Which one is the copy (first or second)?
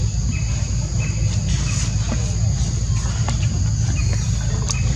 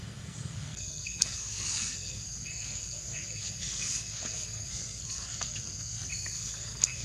second